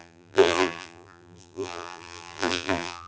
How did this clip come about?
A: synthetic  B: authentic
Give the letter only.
A